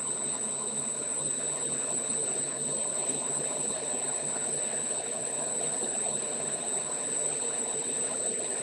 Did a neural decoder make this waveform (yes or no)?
yes